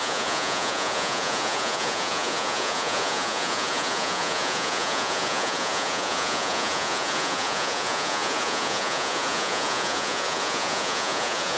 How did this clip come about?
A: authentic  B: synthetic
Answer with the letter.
B